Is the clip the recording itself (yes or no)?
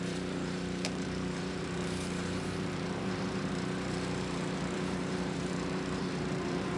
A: no